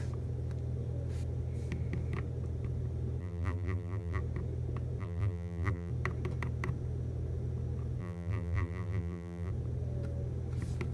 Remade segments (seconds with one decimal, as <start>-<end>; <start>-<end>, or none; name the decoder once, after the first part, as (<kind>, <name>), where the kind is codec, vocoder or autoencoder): 3.2-4.2 (vocoder, BigVGAN v2); 5.0-5.9; 8.0-9.5